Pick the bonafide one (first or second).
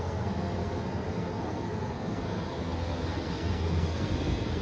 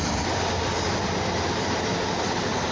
second